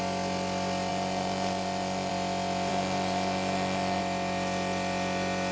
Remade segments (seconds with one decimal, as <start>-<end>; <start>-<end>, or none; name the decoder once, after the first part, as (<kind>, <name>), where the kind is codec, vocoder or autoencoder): 0.9-2.1 (vocoder, Vocos); 2.7-4.0